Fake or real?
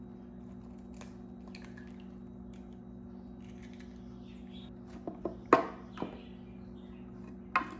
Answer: real